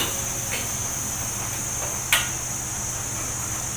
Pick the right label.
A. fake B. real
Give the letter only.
B